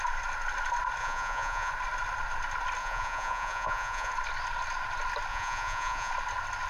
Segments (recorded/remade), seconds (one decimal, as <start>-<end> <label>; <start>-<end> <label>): 0.0-1.0 recorded; 1.0-1.7 remade; 1.7-2.8 recorded; 2.8-4.1 remade; 4.1-5.3 recorded; 5.3-6.1 remade; 6.1-6.7 recorded